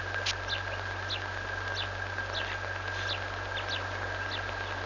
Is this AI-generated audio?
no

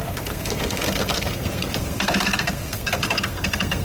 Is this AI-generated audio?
yes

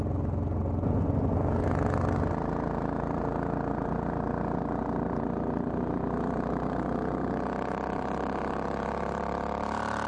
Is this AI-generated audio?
no